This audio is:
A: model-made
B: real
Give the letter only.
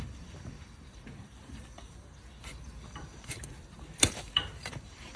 A